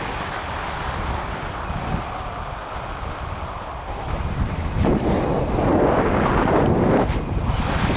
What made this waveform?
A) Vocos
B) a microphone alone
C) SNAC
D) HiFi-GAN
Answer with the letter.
B